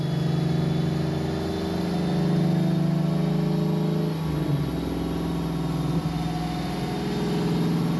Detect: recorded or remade recorded